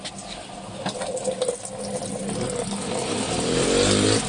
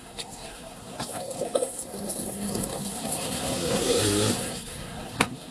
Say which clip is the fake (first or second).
second